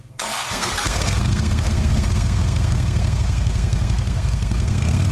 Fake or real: fake